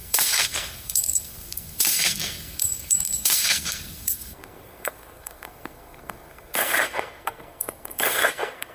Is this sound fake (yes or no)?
yes